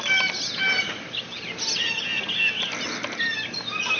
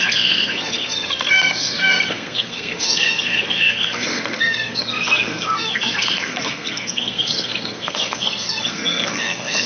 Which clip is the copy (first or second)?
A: second